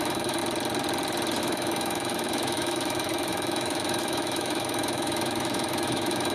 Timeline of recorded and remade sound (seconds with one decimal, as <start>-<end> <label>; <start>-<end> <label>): 0.0-0.4 remade; 0.4-1.4 recorded; 1.4-6.3 remade